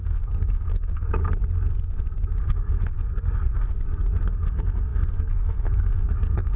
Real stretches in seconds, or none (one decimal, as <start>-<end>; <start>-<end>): 1.2-2.4; 3.7-4.3